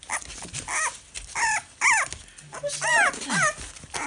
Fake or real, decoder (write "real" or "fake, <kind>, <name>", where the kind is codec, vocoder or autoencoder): real